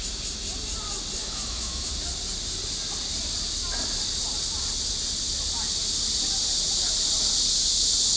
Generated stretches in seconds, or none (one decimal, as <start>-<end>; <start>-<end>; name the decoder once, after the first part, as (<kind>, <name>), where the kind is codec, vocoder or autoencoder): 1.2-1.9 (autoencoder, DAC-VAE)